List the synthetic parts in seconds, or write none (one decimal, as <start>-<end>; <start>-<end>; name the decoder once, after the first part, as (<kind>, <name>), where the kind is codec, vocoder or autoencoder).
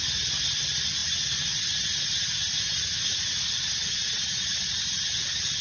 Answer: none